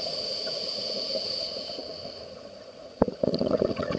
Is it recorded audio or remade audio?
remade